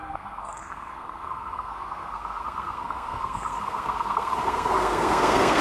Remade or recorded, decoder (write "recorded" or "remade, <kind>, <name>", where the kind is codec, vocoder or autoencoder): remade, codec, SNAC